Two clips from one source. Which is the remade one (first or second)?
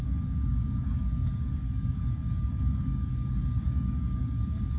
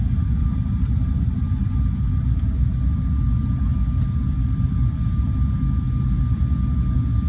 first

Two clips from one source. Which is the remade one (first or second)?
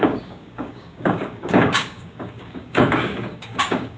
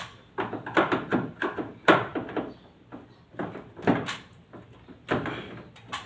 first